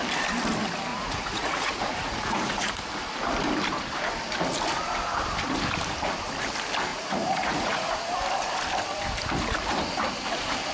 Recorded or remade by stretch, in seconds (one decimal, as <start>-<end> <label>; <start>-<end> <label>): 0.0-0.9 recorded; 0.9-2.7 remade; 2.7-6.9 recorded; 6.9-8.1 remade; 8.1-10.7 recorded